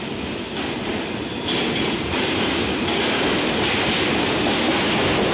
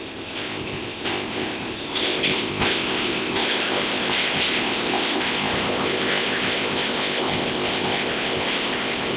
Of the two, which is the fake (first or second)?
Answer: second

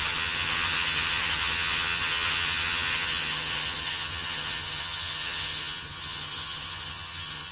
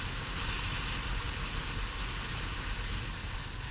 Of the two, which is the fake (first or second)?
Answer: first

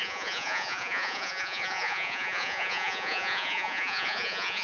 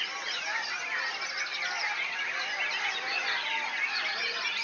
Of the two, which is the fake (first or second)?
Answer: first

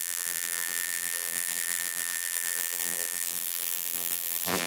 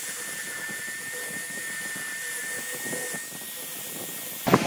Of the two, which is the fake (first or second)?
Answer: first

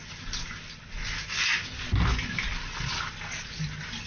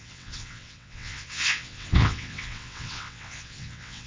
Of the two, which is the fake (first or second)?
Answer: second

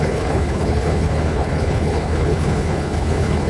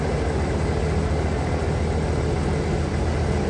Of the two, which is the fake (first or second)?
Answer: first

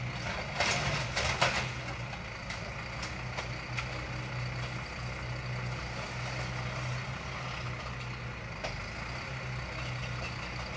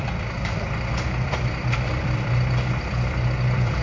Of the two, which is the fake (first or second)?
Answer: second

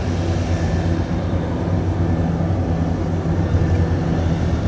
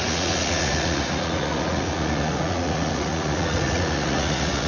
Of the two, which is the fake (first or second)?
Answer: second